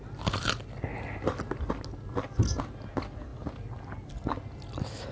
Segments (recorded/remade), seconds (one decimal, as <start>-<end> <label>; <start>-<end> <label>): 0.0-5.1 recorded